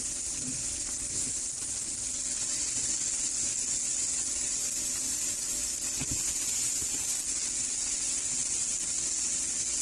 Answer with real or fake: real